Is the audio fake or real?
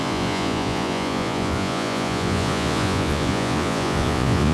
fake